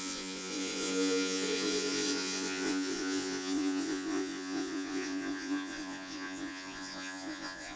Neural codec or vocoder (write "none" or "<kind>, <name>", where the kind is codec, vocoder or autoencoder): vocoder, Vocos